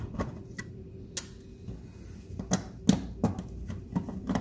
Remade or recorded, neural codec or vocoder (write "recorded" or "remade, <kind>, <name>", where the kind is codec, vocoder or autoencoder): recorded